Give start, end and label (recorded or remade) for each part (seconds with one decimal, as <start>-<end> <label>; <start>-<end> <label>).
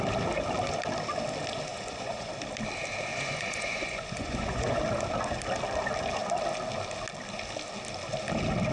0.0-1.7 recorded; 1.7-2.3 remade; 2.3-3.1 recorded; 3.1-4.8 remade; 4.8-8.7 recorded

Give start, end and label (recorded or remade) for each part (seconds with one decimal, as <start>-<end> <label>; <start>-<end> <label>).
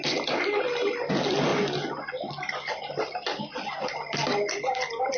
0.0-5.2 recorded